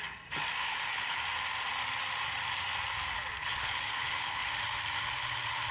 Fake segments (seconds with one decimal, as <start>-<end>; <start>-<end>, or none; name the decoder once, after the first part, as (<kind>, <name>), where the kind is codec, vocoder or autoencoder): 0.6-1.2 (codec, HILCodec); 3.4-4.5

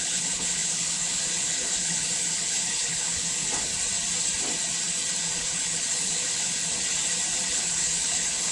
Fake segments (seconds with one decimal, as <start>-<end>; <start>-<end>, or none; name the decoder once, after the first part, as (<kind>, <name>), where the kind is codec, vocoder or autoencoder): 0.0-3.7 (codec, HILCodec); 5.4-6.6; 7.5-8.5